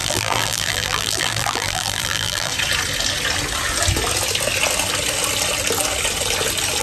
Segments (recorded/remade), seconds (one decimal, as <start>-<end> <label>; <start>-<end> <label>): 0.0-2.5 remade; 2.5-6.8 recorded